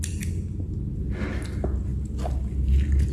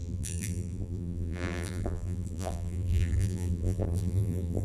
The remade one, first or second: second